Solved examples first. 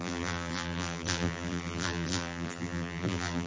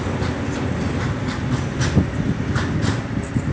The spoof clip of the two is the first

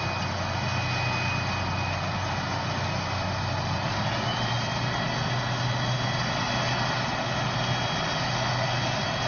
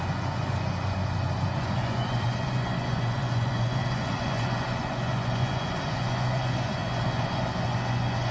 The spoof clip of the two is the second